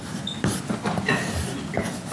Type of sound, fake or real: real